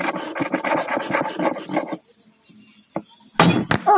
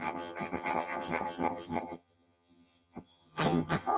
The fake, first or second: second